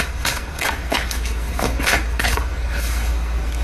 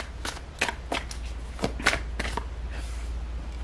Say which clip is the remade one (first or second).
first